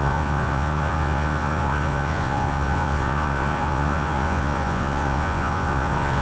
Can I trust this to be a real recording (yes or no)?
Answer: no